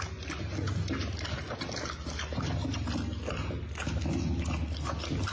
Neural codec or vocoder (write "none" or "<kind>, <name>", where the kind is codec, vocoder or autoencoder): none